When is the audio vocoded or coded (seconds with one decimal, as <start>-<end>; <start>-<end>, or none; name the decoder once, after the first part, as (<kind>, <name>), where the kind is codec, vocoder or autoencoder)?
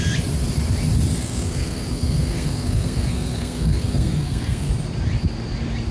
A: 1.2-4.7 (codec, SNAC)